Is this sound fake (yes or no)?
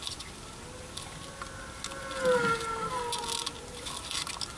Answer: no